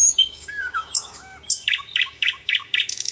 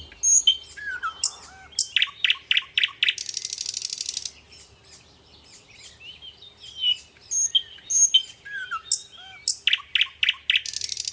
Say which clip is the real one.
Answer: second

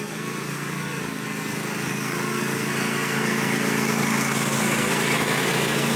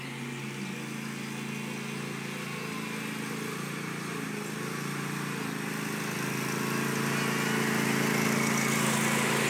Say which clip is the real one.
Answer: second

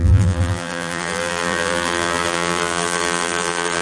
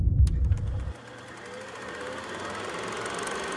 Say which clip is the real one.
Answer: second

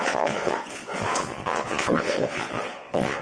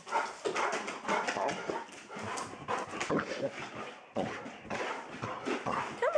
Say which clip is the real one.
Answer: second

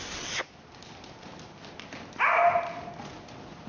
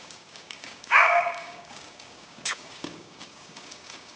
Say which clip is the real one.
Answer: first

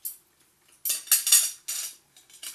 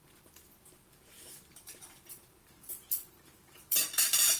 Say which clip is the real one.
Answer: first